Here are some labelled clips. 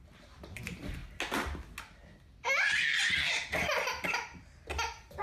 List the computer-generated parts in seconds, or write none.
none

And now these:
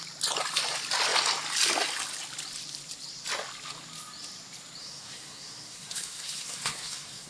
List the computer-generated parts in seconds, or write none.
4.8-7.3 (codec, SNAC)

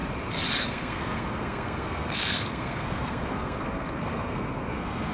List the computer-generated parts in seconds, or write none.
0.6-5.1 (codec, SNAC)

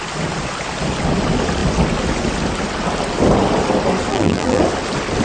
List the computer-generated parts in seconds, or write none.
4.1-4.6 (vocoder, BigVGAN v2)

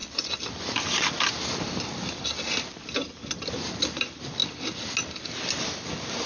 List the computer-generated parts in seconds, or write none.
none

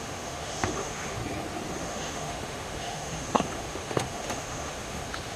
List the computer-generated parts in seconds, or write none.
0.0-1.2 (autoencoder, DAC-VAE); 1.8-5.4

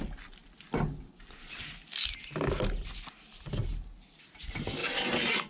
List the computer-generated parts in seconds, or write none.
none